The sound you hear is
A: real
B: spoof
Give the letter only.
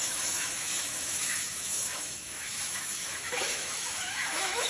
B